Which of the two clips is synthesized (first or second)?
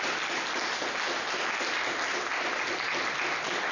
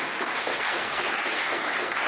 second